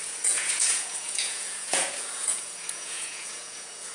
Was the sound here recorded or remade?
remade